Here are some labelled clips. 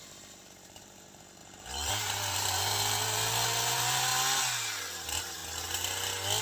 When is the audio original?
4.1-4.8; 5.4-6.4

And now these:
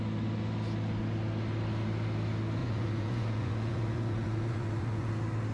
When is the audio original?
0.0-2.6; 5.1-5.5